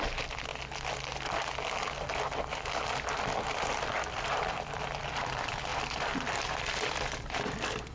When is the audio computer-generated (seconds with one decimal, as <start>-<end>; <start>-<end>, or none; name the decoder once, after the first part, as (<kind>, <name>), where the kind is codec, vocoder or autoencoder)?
0.0-0.5 (vocoder, BigVGAN v2); 4.1-7.9